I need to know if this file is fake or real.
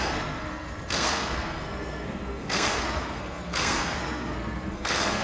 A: fake